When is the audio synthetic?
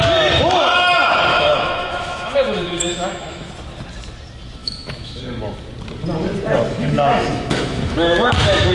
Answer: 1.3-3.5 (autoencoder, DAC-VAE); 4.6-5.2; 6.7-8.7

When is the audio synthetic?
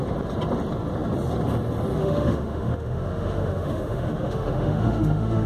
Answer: 2.0-5.5 (autoencoder, DAC-VAE)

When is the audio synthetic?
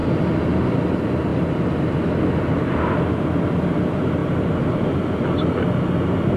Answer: none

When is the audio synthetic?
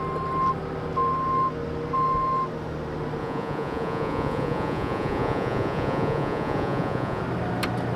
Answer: 3.2-7.2 (vocoder, Vocos)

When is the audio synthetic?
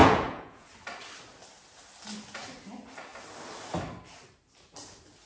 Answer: 0.0-0.7 (vocoder, Vocos)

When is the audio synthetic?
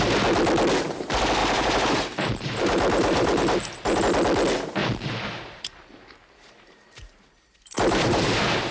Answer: 1.4-4.0 (vocoder, BigVGAN v2); 4.8-8.7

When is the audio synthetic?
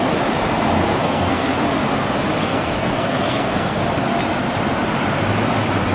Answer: 1.0-1.6 (codec, SNAC); 2.4-3.8